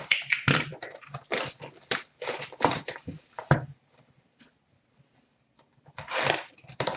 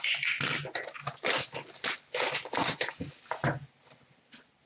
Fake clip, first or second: first